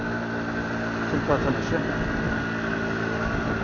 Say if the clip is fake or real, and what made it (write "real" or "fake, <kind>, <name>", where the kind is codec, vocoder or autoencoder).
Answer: real